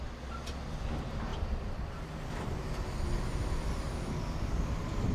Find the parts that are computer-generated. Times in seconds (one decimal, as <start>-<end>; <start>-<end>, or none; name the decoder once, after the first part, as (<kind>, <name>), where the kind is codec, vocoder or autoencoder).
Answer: 1.3-2.6 (vocoder, BigVGAN v2)